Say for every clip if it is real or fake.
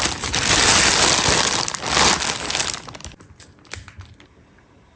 real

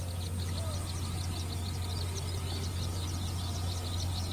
real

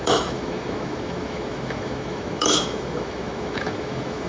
fake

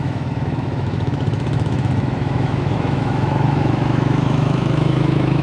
fake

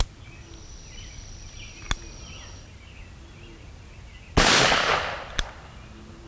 real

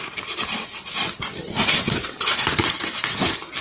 real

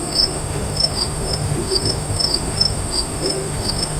fake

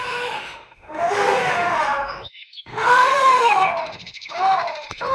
fake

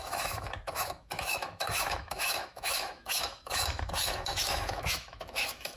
fake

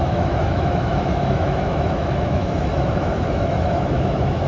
fake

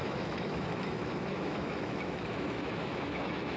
fake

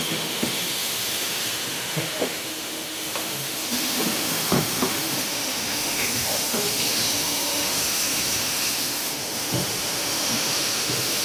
fake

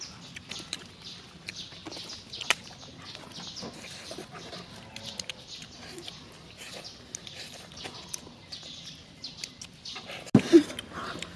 real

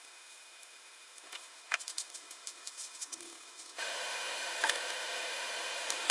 fake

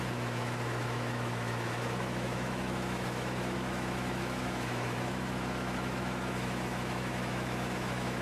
fake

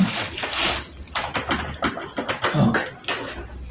real